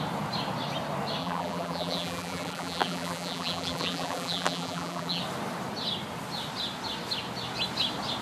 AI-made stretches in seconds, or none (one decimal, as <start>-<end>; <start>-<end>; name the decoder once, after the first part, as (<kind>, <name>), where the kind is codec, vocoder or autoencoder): 1.2-5.2 (vocoder, BigVGAN v2)